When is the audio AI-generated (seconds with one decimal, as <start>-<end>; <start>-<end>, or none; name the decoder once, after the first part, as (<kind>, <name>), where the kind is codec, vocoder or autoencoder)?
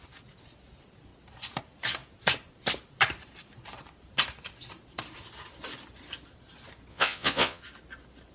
6.9-7.6 (vocoder, Vocos)